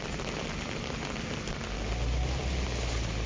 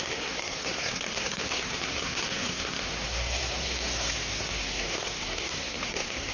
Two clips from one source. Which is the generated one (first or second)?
second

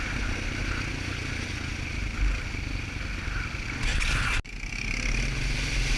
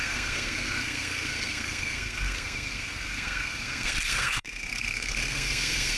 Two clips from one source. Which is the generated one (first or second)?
second